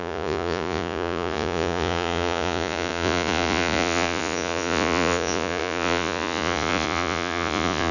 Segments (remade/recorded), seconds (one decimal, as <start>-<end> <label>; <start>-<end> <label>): 0.0-7.9 remade